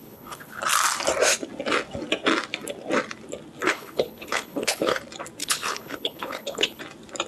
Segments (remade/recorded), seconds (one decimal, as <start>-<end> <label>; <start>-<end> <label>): 0.0-0.6 remade; 0.6-3.6 recorded; 3.6-5.0 remade; 5.0-5.4 recorded; 5.4-6.8 remade; 6.8-7.3 recorded